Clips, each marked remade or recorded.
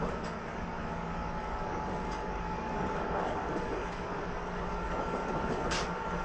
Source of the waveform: remade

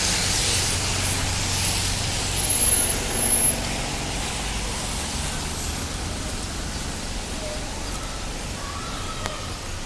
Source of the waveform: recorded